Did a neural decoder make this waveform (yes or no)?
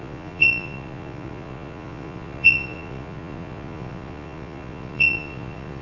yes